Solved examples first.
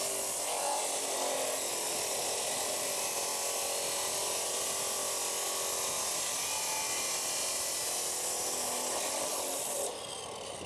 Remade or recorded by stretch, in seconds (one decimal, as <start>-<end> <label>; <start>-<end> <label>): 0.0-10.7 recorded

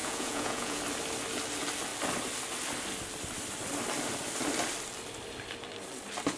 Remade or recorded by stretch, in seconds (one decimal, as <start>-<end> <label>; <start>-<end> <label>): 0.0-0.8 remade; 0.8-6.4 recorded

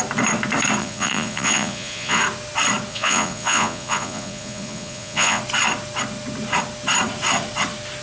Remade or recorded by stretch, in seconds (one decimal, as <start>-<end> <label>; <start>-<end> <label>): 0.0-0.8 recorded; 0.8-2.2 remade; 2.2-2.9 recorded; 2.9-5.4 remade; 5.4-8.0 recorded

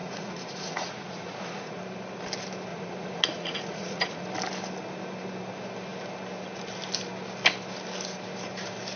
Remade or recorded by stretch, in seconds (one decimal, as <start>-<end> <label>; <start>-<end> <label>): 0.0-1.8 remade; 1.8-2.7 recorded; 2.7-4.2 remade; 4.2-9.0 recorded

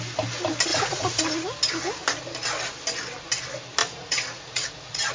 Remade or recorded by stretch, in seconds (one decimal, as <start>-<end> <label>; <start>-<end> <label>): 0.0-0.7 recorded; 0.7-1.2 remade; 1.2-3.8 recorded; 3.8-5.1 remade